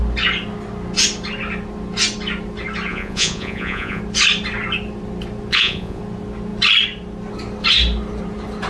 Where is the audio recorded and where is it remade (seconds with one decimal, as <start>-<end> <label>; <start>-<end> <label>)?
0.0-2.9 recorded; 2.9-4.0 remade; 4.0-5.5 recorded; 5.5-6.0 remade; 6.0-8.7 recorded